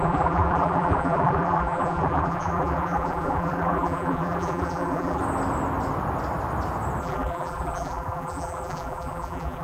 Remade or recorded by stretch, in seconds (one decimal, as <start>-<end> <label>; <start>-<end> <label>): 0.0-5.2 remade; 5.2-7.0 recorded; 7.0-9.6 remade